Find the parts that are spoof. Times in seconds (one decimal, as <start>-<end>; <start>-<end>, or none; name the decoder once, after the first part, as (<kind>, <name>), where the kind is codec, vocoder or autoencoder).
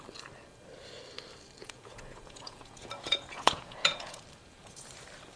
1.6-4.2 (vocoder, Vocos)